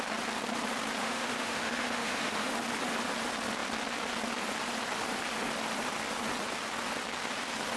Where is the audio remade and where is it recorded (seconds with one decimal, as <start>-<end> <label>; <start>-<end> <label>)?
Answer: 0.0-1.0 recorded; 1.0-2.5 remade; 2.5-7.8 recorded

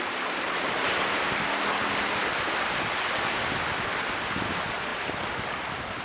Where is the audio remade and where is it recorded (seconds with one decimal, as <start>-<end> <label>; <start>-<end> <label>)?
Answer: 0.0-6.0 recorded

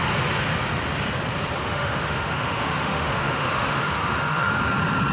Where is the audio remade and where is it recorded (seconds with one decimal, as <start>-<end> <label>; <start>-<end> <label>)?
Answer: 0.0-1.6 recorded; 1.6-4.5 remade; 4.5-5.1 recorded

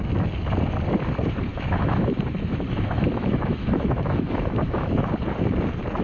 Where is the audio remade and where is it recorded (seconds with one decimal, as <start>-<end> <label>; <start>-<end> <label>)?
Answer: 0.0-1.5 recorded; 1.5-5.1 remade; 5.1-6.0 recorded

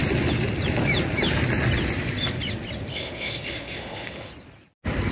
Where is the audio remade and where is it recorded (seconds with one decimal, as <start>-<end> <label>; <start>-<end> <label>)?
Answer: 0.0-2.9 recorded; 2.9-4.3 remade; 4.3-5.1 recorded

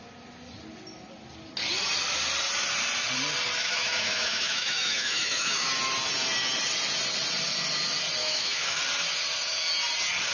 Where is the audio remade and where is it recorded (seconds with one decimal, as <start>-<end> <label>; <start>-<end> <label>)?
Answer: 0.0-3.6 recorded; 3.6-5.7 remade; 5.7-8.2 recorded; 8.2-8.8 remade; 8.8-10.3 recorded

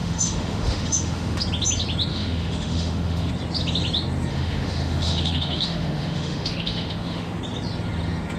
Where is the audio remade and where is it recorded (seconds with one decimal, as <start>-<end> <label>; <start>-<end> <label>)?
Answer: 0.0-1.4 remade; 1.4-2.1 recorded; 2.1-3.3 remade; 3.3-4.3 recorded; 4.3-7.4 remade; 7.4-8.4 recorded